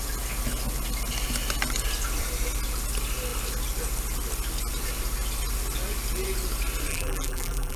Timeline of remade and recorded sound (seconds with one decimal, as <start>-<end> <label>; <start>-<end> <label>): 0.0-6.9 recorded; 6.9-7.8 remade